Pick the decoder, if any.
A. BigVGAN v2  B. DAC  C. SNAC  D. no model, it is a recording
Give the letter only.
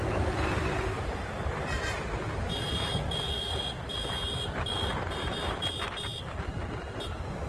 D